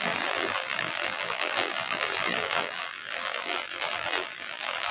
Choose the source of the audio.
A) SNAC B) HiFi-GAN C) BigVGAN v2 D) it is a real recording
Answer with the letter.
C